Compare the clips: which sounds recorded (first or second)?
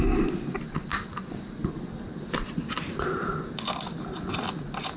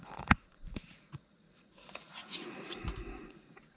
first